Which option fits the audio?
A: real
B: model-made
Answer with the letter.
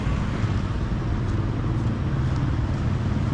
A